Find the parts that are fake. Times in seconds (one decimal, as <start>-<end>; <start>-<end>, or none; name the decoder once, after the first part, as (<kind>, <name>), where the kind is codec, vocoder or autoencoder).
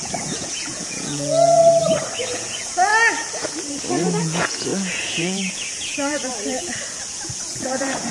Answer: 0.0-1.6 (vocoder, Vocos); 2.2-2.9; 4.2-8.1